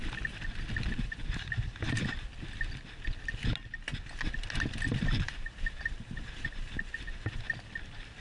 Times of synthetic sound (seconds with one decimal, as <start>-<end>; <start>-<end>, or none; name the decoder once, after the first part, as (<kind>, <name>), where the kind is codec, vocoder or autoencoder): 4.9-6.9 (vocoder, BigVGAN v2)